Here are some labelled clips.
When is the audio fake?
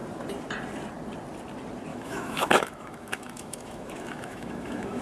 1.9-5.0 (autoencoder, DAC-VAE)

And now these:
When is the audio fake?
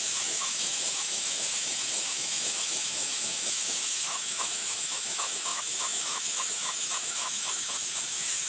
0.0-8.5 (autoencoder, DAC-VAE)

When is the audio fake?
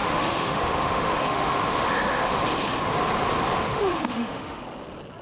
0.0-2.4 (autoencoder, DAC-VAE); 3.7-4.6